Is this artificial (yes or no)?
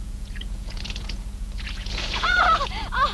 yes